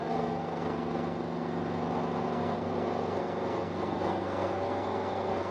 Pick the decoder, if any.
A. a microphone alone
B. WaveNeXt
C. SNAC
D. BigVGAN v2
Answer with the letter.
C